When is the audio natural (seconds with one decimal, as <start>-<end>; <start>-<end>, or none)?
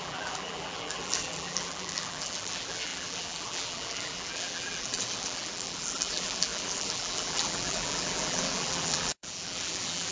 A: none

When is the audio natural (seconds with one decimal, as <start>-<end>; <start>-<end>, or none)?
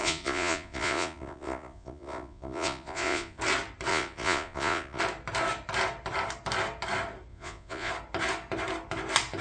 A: 3.4-3.9; 5.0-7.3; 7.9-9.4